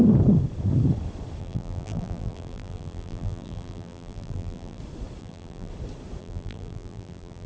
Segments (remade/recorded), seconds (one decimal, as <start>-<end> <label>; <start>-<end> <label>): 0.0-1.4 recorded; 1.4-4.8 remade; 4.8-5.2 recorded; 5.2-5.7 remade; 5.7-6.2 recorded; 6.2-7.5 remade